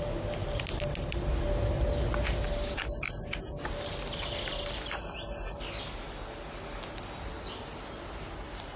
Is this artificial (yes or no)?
no